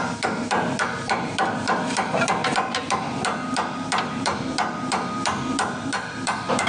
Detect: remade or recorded remade